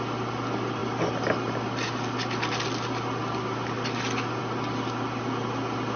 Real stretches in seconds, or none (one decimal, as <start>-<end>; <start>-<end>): 0.0-6.0